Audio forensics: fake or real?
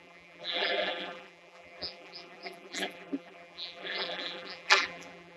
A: fake